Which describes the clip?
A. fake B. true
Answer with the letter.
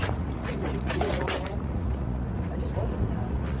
A